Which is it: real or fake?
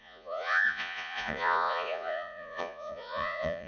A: fake